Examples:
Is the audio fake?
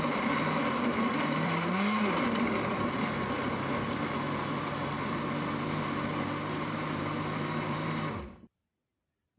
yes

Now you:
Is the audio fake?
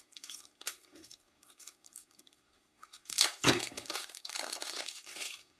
yes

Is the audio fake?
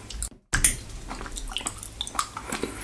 no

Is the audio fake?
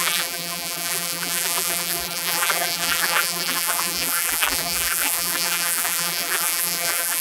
yes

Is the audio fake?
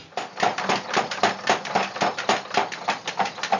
no